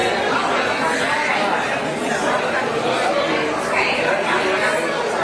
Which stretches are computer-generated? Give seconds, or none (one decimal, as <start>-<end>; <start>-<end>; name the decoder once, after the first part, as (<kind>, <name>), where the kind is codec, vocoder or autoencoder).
1.9-4.1 (vocoder, BigVGAN v2)